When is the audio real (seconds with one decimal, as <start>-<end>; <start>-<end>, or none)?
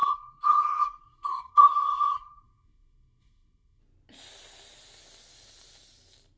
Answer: 3.8-6.4